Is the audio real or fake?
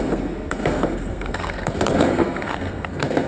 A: fake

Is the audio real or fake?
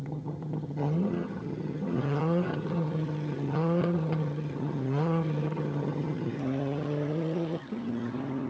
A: fake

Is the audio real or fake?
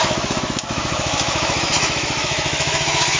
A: fake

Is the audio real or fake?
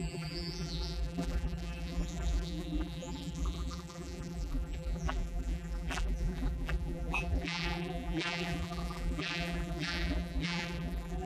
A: fake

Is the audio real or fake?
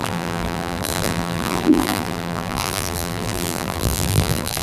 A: fake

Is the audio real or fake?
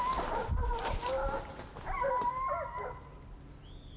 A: real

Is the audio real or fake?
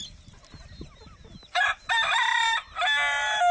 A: real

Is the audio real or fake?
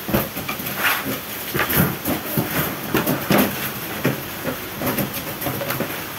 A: real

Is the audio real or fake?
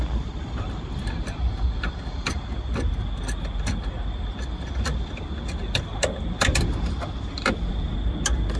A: real